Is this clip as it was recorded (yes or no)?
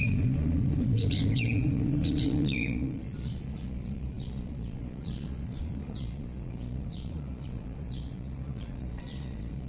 no